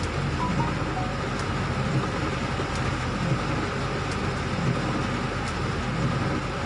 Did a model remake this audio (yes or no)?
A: no